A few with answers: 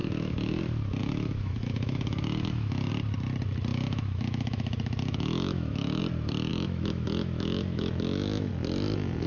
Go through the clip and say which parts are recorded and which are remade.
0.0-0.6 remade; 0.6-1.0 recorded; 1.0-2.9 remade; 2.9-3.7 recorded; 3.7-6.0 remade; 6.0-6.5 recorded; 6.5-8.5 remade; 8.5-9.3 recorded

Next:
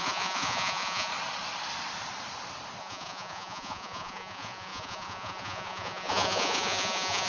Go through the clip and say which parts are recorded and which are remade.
0.0-1.1 remade; 1.1-2.8 recorded; 2.8-7.3 remade

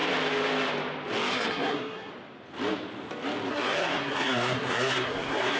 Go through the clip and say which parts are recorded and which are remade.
0.0-1.3 recorded; 1.3-2.1 remade; 2.1-3.5 recorded; 3.5-5.6 remade

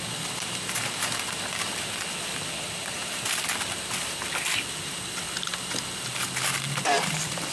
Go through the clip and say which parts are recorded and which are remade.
0.0-7.5 recorded

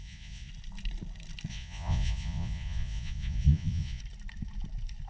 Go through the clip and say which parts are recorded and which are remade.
0.0-0.5 remade; 0.5-1.5 recorded; 1.5-4.0 remade; 4.0-5.1 recorded

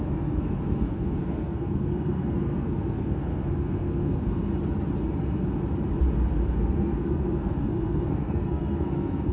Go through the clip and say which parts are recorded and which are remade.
0.0-4.5 remade; 4.5-6.5 recorded; 6.5-9.3 remade